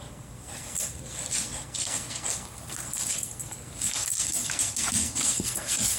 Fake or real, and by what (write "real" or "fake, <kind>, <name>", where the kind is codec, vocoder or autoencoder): fake, codec, SNAC